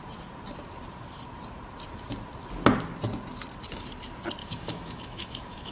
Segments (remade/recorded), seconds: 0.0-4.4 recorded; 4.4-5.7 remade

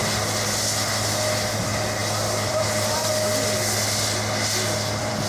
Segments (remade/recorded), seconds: 0.0-2.0 recorded; 2.0-5.3 remade

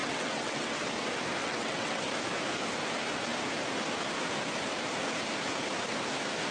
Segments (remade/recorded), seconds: 0.0-0.9 remade; 0.9-1.4 recorded; 1.4-2.0 remade; 2.0-6.5 recorded

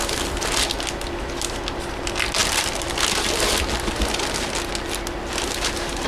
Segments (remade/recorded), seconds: 0.0-6.1 recorded

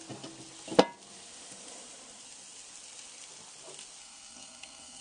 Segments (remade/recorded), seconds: 0.0-4.0 recorded; 4.0-5.0 remade